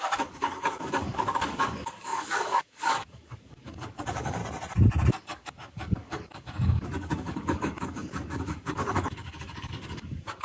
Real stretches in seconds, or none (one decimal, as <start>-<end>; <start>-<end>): 4.4-5.2